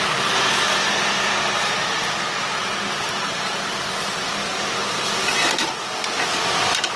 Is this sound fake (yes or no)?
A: no